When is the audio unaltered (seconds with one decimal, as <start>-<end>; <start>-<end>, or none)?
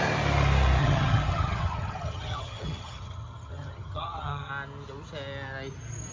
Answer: 0.0-0.8; 4.5-6.1